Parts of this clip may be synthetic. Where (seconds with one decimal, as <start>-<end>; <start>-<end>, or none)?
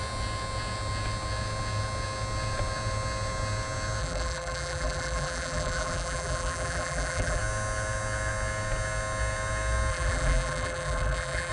4.0-7.4; 9.9-11.5